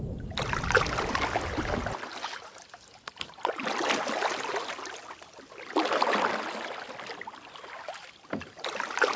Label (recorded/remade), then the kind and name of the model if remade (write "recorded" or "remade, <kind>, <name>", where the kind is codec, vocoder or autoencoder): recorded